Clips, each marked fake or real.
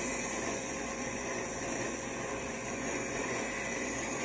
fake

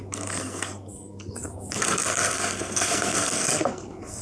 fake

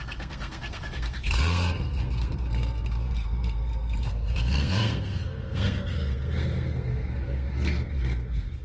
fake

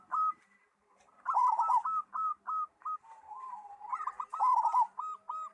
fake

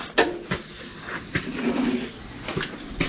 real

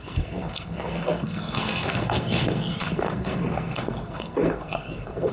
fake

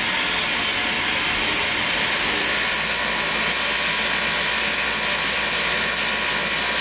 real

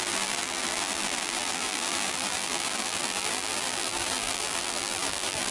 fake